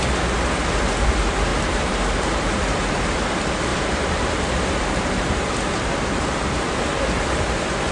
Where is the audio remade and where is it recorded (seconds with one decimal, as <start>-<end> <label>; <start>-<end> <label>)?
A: 0.0-1.5 recorded; 1.5-2.9 remade; 2.9-3.7 recorded; 3.7-5.3 remade; 5.3-5.9 recorded; 5.9-6.9 remade; 6.9-7.9 recorded